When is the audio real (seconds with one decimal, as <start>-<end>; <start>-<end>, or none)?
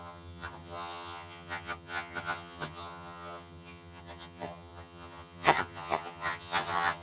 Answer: none